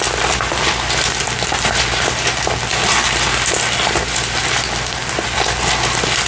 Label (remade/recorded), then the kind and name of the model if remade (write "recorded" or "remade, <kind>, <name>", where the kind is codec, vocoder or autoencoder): recorded